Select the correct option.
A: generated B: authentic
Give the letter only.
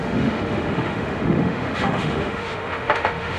A